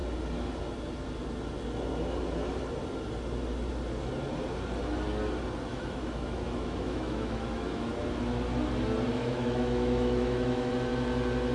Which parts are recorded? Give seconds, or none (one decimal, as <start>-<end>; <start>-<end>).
0.0-5.7; 7.9-9.1; 10.7-11.5